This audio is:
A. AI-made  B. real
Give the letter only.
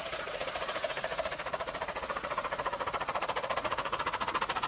A